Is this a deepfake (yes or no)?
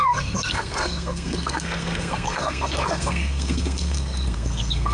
yes